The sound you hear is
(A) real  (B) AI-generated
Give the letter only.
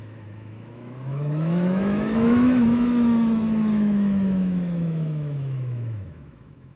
B